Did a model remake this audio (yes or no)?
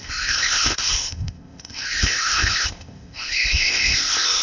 yes